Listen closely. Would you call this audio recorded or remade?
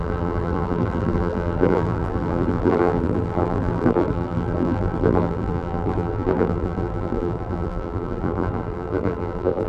remade